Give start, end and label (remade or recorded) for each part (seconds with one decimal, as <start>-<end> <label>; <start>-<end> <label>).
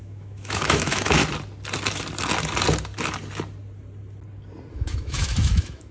0.0-1.2 remade; 1.2-4.7 recorded; 4.7-5.9 remade